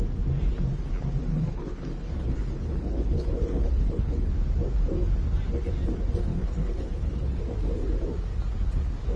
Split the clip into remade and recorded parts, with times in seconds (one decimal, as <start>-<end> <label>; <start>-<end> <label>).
0.0-1.3 recorded; 1.3-4.3 remade; 4.3-6.3 recorded; 6.3-7.4 remade; 7.4-9.2 recorded